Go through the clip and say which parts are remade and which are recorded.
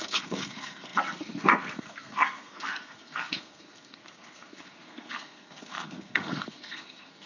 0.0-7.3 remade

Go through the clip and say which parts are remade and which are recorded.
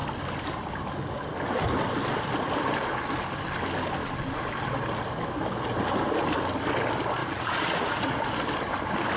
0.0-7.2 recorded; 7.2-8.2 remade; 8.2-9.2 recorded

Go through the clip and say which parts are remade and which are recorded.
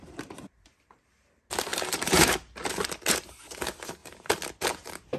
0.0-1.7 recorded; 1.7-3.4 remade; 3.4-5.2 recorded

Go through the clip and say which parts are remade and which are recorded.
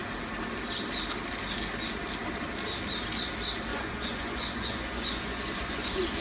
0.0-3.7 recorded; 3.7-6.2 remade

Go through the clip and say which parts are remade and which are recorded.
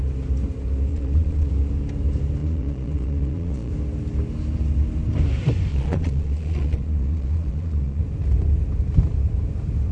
0.0-0.9 recorded; 0.9-1.5 remade; 1.5-2.4 recorded; 2.4-3.7 remade; 3.7-5.7 recorded; 5.7-8.0 remade; 8.0-9.9 recorded